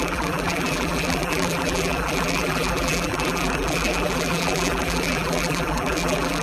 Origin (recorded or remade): remade